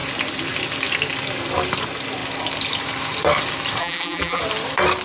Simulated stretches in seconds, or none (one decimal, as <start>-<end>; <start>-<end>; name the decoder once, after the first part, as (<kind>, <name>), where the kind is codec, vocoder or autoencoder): 3.8-4.4 (vocoder, BigVGAN v2)